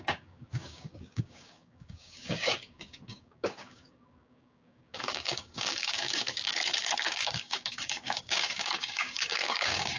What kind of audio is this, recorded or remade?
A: remade